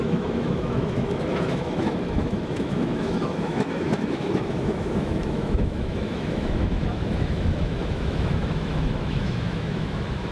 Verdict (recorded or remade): remade